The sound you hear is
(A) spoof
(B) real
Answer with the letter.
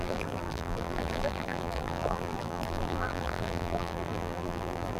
A